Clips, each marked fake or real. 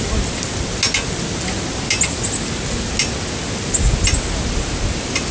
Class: real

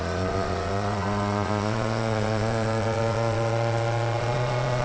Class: fake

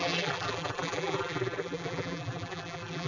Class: fake